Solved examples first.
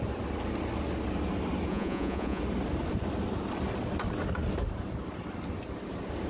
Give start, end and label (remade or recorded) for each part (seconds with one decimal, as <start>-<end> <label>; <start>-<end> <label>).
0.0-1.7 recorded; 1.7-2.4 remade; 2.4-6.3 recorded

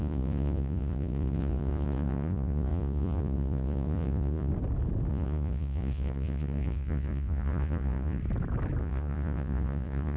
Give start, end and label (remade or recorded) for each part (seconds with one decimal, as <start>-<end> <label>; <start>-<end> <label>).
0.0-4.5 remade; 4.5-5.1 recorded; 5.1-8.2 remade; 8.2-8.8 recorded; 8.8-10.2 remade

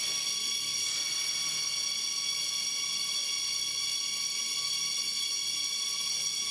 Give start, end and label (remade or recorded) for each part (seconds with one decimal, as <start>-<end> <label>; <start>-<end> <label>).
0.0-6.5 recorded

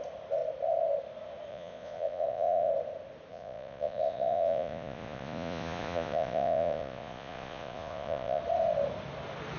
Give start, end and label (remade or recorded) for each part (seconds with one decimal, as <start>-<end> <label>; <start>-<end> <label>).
0.0-1.5 recorded; 1.5-2.7 remade; 2.7-3.3 recorded; 3.3-8.4 remade; 8.4-9.6 recorded

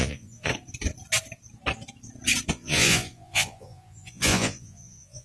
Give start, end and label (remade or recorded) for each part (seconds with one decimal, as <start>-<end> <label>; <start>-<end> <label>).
0.0-0.5 remade; 0.5-2.5 recorded; 2.5-5.2 remade